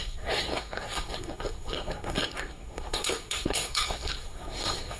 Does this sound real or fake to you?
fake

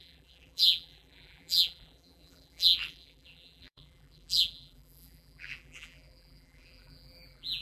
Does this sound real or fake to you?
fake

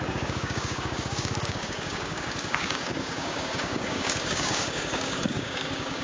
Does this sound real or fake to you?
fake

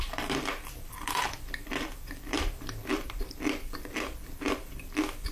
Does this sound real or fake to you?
fake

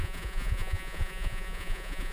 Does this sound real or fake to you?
fake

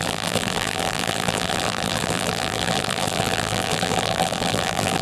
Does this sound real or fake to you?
fake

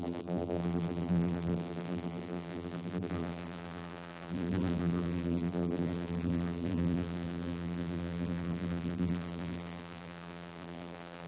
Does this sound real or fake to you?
fake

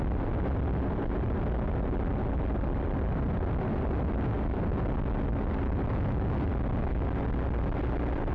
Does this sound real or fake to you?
real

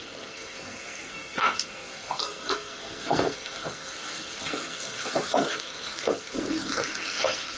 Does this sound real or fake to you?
fake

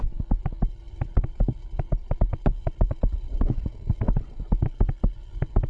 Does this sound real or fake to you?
real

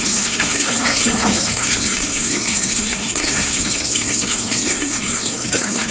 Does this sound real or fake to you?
fake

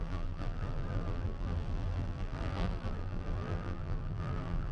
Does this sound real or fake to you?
fake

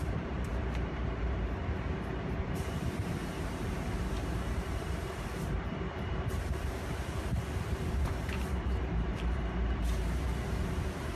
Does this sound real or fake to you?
fake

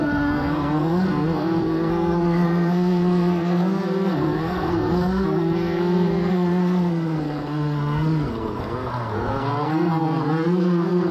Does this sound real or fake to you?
fake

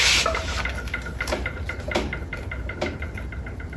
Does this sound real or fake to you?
real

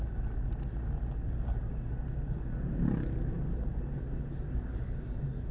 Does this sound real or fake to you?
real